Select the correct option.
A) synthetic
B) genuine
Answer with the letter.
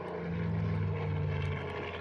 B